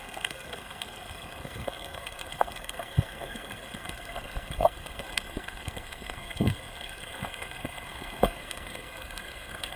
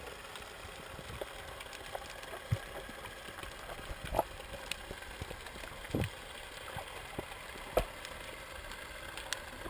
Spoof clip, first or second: first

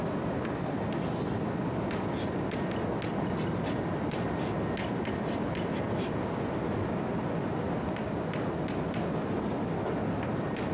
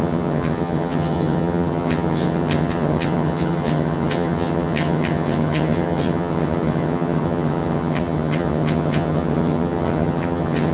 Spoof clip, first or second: second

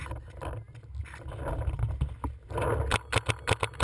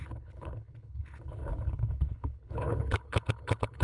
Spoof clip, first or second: second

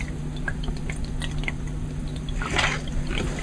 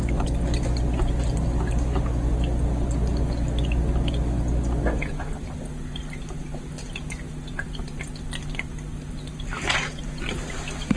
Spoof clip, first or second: first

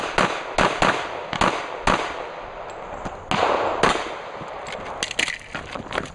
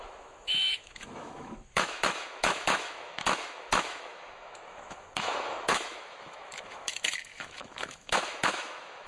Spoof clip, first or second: second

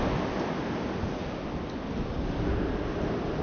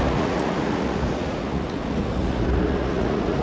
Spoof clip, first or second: second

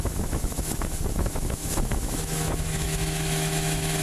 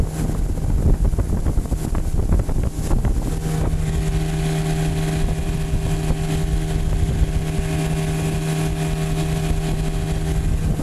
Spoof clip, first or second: first